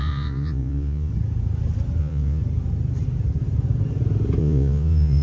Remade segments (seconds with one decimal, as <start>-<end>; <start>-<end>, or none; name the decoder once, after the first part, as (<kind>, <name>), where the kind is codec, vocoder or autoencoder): 0.0-1.1 (vocoder, Vocos); 2.0-2.4; 4.4-5.2